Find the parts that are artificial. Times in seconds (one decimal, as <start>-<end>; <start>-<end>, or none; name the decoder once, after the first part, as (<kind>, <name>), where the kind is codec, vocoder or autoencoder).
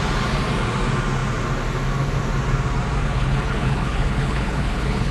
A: 3.0-5.1 (codec, HILCodec)